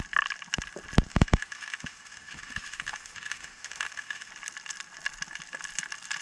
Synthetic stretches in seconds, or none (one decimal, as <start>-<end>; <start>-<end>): 1.1-4.3